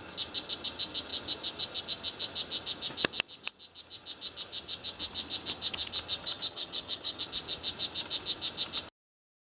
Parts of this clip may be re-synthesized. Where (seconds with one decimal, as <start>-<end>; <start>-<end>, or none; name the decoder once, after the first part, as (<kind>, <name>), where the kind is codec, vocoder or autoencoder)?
6.2-7.2 (vocoder, HiFi-GAN)